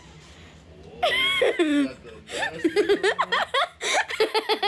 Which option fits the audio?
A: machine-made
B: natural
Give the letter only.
B